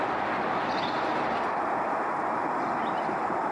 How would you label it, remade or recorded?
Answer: remade